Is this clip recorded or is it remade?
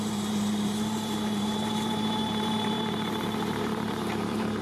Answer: remade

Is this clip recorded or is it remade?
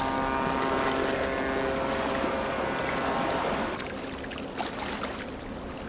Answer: recorded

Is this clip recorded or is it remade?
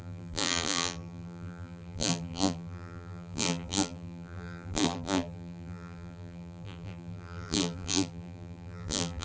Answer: remade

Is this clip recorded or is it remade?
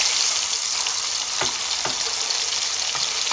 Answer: recorded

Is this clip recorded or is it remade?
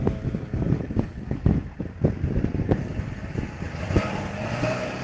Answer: remade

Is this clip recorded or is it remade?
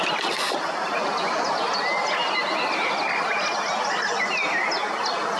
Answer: recorded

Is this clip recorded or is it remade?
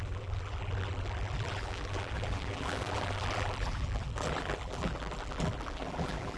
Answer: remade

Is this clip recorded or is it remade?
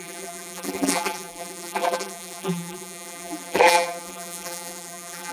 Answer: remade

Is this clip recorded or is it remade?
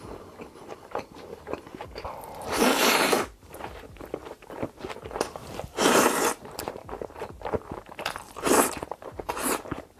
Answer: remade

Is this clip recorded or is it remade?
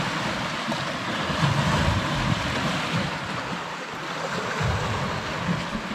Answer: recorded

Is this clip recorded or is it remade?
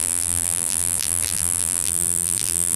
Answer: remade